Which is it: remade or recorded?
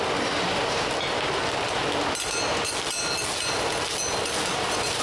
recorded